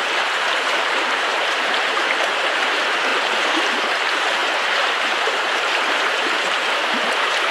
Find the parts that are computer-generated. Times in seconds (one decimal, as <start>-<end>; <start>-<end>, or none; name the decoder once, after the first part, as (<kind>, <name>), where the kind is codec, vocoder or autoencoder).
0.0-7.5 (vocoder, BigVGAN v2)